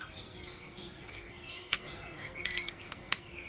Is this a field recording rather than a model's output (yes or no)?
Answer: no